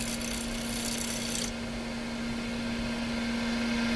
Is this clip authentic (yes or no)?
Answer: yes